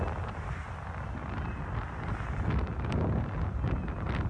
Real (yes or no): yes